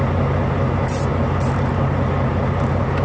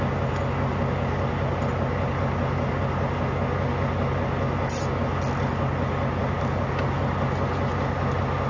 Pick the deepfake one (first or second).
first